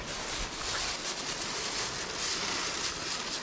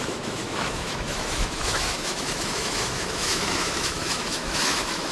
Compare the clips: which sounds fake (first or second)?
second